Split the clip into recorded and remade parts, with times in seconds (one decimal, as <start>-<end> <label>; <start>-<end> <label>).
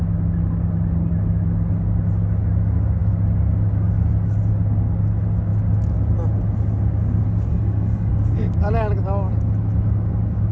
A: 0.0-7.5 recorded; 7.5-8.1 remade; 8.1-10.5 recorded